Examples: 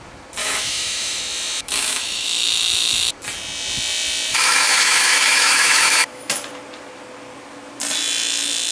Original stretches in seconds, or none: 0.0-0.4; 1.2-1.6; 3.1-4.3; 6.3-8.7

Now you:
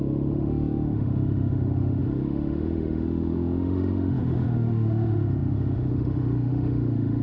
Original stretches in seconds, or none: none

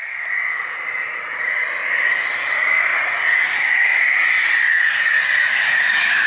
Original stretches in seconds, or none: 0.0-5.4

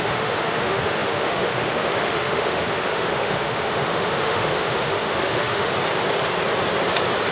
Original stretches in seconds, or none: 5.7-7.3

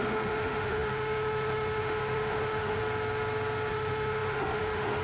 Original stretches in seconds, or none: 2.8-3.7

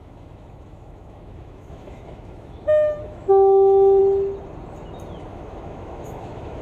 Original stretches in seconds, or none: 4.0-5.3

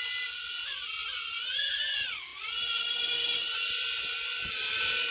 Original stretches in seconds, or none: 0.0-5.1